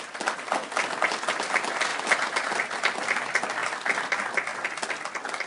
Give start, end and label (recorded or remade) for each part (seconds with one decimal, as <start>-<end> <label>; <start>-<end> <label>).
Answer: 0.0-1.9 recorded; 1.9-2.6 remade; 2.6-3.6 recorded; 3.6-4.1 remade; 4.1-5.5 recorded